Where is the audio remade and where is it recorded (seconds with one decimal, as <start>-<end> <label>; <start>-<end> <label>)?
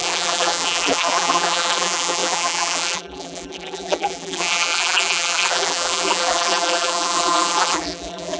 0.0-8.4 remade